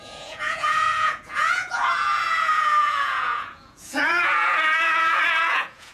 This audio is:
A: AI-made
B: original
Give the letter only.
A